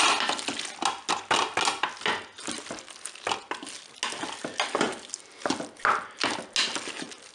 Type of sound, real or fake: real